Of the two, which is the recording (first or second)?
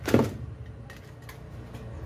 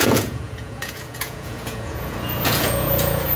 first